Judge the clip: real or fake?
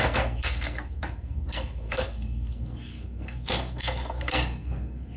fake